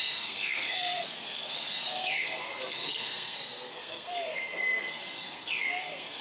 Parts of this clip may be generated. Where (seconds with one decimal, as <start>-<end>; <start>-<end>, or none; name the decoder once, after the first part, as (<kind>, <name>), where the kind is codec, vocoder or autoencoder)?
0.0-6.2 (codec, SNAC)